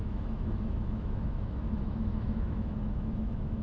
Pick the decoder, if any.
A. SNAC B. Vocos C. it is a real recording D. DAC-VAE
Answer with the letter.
D